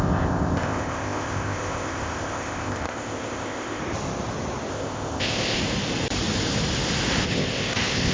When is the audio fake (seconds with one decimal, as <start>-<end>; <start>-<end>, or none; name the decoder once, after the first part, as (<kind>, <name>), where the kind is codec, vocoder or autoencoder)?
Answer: 0.0-3.8 (codec, ZipCodec); 4.7-5.6; 7.3-8.1